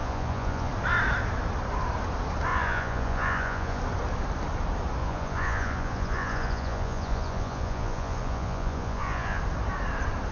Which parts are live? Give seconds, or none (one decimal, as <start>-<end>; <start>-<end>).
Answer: 0.7-2.5; 3.8-5.0; 9.4-10.3